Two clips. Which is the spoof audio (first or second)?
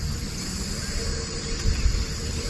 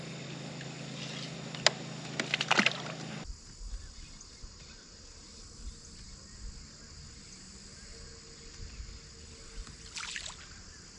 first